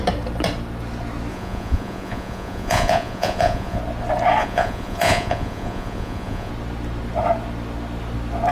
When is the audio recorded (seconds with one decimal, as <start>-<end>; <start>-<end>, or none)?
0.0-1.3; 3.8-4.4; 6.5-8.5